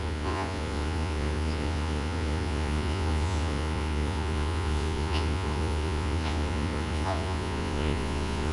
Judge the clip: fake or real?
fake